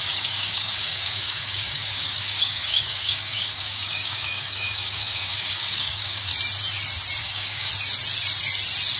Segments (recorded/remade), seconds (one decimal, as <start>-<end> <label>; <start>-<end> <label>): 0.0-6.3 remade; 6.3-7.2 recorded; 7.2-7.7 remade; 7.7-9.0 recorded